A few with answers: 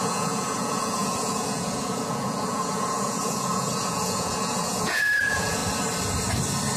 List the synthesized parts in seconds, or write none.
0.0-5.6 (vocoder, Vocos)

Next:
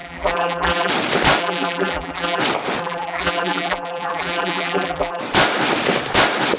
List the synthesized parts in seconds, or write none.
0.0-0.9 (vocoder, BigVGAN v2); 1.4-2.4; 2.8-5.2

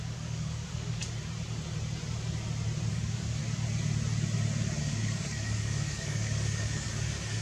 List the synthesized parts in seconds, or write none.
0.0-1.0 (codec, DAC); 2.9-3.4; 4.8-7.4